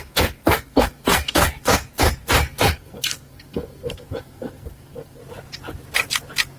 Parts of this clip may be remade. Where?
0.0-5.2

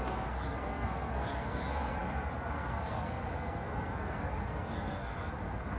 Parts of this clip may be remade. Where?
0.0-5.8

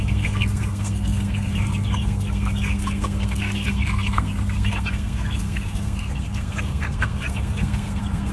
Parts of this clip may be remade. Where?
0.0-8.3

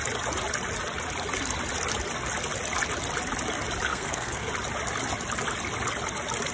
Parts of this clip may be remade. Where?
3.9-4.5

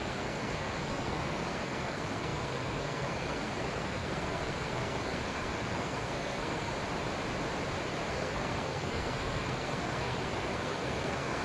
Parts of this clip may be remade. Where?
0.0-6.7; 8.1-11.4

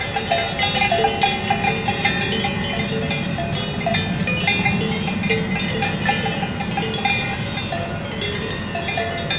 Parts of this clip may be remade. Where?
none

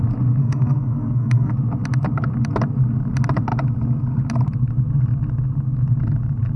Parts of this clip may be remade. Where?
0.4-1.5

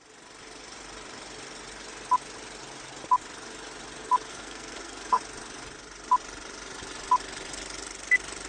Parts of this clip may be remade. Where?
4.3-5.2